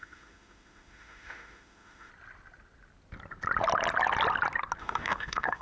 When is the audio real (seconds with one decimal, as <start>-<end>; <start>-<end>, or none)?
2.1-4.8